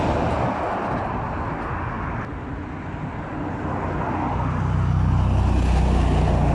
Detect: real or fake real